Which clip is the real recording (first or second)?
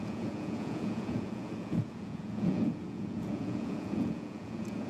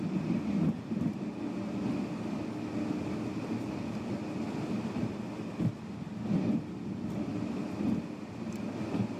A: second